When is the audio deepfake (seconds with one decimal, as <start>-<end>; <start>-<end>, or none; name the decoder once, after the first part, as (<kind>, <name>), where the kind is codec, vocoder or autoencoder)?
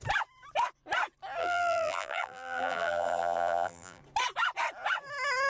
1.4-4.0 (vocoder, BigVGAN v2)